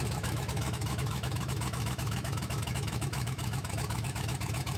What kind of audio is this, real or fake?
fake